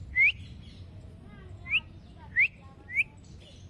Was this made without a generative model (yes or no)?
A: yes